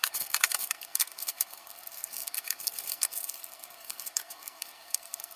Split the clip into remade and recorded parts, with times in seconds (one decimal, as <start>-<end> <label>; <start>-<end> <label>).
0.0-5.4 remade